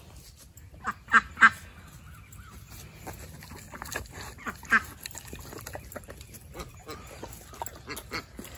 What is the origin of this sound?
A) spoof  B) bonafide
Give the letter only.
B